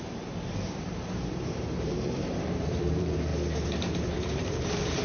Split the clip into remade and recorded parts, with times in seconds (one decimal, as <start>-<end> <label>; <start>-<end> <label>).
0.0-3.3 remade; 3.3-4.3 recorded; 4.3-5.0 remade